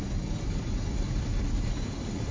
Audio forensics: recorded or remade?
recorded